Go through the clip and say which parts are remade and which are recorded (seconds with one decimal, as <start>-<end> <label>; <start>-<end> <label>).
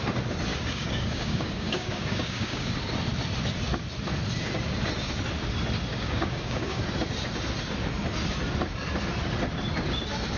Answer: 0.0-0.5 recorded; 0.5-2.8 remade; 2.8-5.9 recorded; 5.9-6.8 remade; 6.8-10.4 recorded